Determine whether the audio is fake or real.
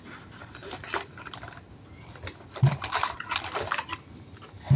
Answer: real